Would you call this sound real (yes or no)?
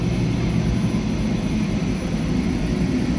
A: yes